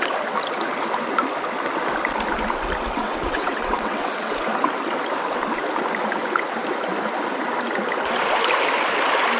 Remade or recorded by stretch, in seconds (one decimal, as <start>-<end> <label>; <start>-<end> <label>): 0.0-2.9 recorded; 2.9-4.3 remade; 4.3-9.4 recorded